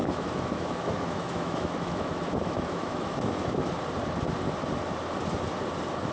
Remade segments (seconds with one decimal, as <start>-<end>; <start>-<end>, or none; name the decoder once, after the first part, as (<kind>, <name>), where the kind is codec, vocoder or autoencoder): 0.0-3.7 (autoencoder, DAC-VAE)